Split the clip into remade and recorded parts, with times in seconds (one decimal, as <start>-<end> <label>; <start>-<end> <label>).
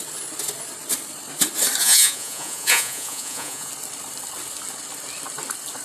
0.0-1.8 recorded; 1.8-3.7 remade; 3.7-5.8 recorded